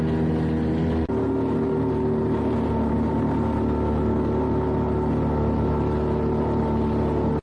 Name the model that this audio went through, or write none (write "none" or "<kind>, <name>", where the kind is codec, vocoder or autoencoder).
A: none